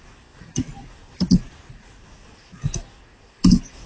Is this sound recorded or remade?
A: recorded